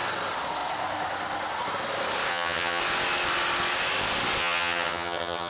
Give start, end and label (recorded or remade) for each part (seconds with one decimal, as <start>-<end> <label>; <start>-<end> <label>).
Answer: 0.0-2.3 recorded; 2.3-2.8 remade; 2.8-4.4 recorded; 4.4-5.5 remade